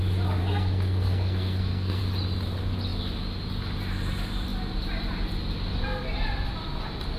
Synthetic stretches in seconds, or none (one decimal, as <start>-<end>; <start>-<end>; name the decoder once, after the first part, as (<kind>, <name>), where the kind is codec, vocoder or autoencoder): 0.4-2.0 (codec, SNAC)